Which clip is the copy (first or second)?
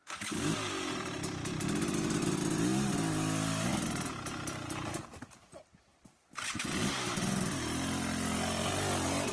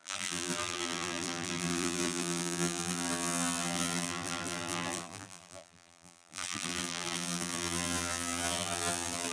second